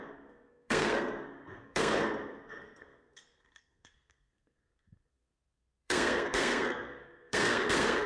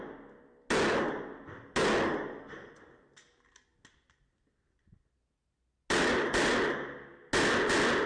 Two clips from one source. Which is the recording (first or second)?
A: second